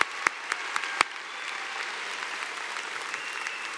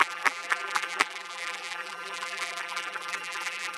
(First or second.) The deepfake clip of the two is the second